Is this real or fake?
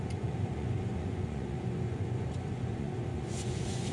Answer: fake